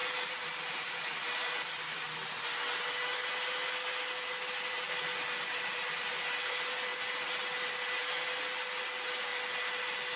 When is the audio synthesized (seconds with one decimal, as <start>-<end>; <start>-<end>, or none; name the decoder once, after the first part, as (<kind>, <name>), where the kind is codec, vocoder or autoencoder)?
0.0-1.6 (vocoder, BigVGAN v2)